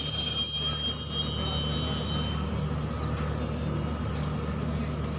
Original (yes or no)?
yes